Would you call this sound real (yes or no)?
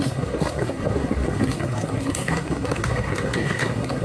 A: no